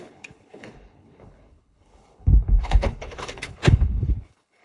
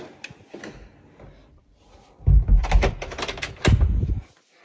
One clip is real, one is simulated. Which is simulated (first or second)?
first